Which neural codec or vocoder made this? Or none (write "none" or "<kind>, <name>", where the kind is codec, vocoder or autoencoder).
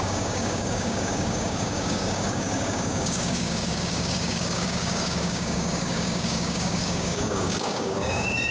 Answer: codec, DAC